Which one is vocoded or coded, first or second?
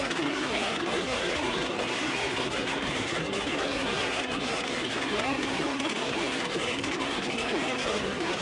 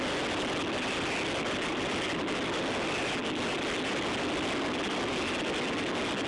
first